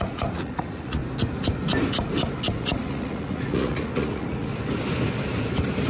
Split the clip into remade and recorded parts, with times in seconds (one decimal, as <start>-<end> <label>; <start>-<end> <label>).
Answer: 0.0-1.0 remade; 1.0-2.6 recorded; 2.6-4.5 remade; 4.5-5.9 recorded